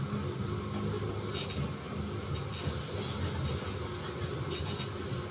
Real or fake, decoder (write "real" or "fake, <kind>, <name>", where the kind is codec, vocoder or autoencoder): real